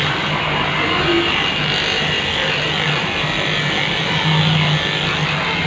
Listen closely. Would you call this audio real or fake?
real